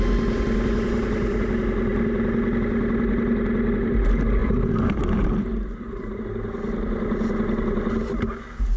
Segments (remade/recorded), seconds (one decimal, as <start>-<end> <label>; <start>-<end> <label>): 0.0-4.4 recorded; 4.4-6.2 remade; 6.2-8.8 recorded